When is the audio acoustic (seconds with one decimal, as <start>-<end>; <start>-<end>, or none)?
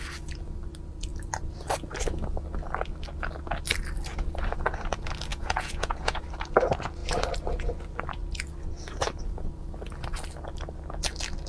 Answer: 0.0-5.3; 6.2-11.5